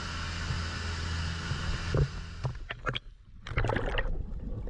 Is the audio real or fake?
real